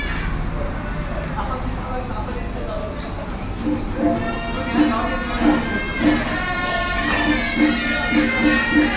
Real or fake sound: real